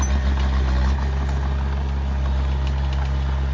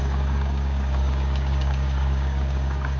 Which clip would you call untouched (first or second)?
first